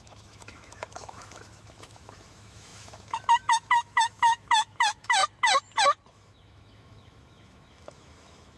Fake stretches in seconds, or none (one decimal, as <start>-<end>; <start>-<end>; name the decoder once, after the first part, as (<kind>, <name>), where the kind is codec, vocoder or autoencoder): 0.0-5.2 (autoencoder, DAC-VAE); 6.1-8.6